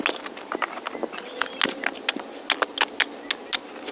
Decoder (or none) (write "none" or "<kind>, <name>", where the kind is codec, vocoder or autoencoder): none